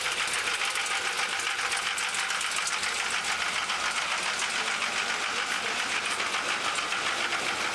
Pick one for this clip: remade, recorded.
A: recorded